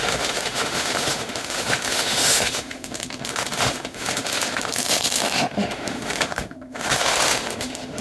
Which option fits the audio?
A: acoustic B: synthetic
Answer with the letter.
B